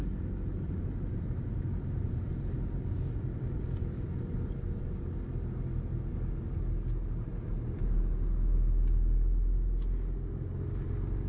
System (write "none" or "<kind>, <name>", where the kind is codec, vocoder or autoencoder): none